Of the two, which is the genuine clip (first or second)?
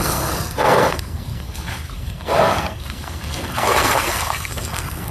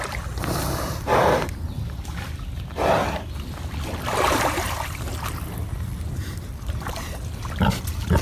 second